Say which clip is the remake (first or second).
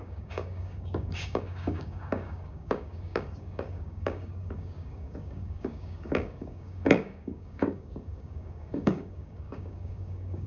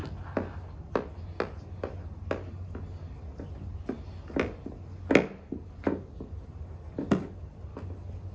first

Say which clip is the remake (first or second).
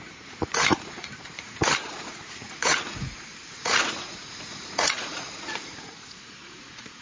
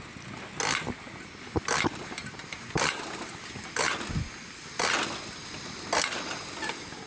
first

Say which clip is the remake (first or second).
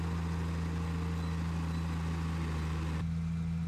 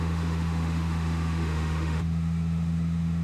second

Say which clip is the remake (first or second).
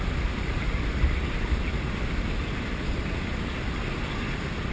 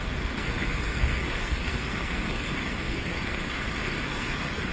second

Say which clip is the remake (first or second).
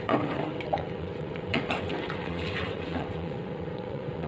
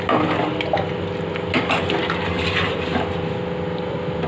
first